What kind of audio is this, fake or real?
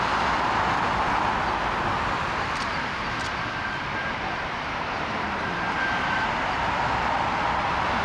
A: fake